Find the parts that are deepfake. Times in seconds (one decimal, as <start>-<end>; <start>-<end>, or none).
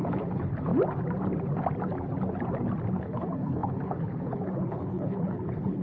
0.0-0.7; 3.0-5.8